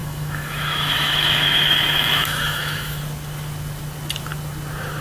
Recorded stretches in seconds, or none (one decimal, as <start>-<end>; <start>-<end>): 3.0-5.0

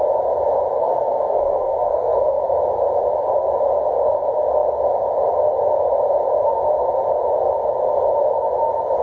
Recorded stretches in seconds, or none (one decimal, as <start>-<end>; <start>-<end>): 0.0-0.8; 2.4-9.0